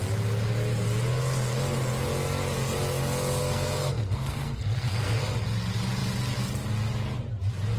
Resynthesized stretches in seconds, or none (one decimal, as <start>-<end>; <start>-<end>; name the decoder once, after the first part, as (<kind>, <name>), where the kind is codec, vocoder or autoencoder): 3.4-5.2 (codec, SNAC)